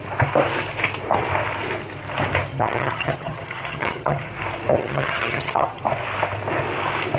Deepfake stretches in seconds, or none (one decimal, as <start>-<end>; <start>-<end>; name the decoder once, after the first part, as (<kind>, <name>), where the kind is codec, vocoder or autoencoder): 2.5-4.3 (vocoder, HiFi-GAN); 4.7-5.8